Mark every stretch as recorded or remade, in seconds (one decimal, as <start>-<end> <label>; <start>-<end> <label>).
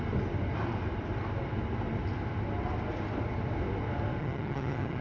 0.0-4.2 recorded; 4.2-5.0 remade